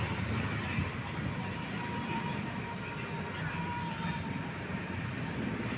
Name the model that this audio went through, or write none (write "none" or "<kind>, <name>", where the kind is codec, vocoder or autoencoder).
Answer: none